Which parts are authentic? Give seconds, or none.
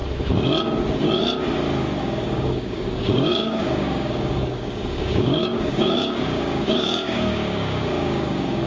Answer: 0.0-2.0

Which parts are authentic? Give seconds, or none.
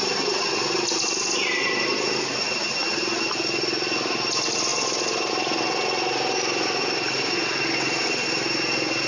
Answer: 0.0-9.1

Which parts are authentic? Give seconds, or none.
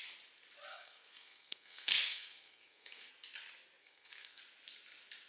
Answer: 0.0-0.7; 3.1-3.8; 4.4-5.3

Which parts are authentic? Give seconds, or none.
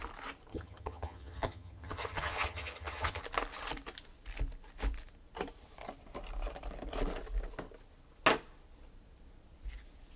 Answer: 0.0-0.5; 3.2-10.2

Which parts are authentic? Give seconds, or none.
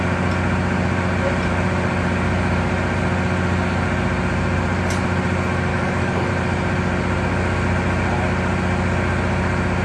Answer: 0.0-5.7; 6.3-9.8